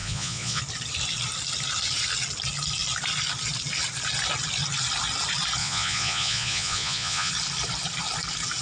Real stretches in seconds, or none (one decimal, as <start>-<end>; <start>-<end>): 0.6-5.6; 7.3-8.6